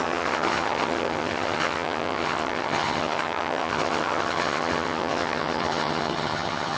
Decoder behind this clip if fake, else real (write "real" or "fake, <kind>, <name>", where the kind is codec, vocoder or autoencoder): fake, vocoder, HiFi-GAN